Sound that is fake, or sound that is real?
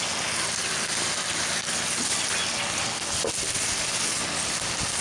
real